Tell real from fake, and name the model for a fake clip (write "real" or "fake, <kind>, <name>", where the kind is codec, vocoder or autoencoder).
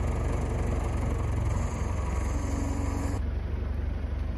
real